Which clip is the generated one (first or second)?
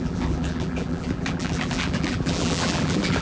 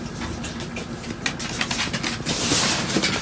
first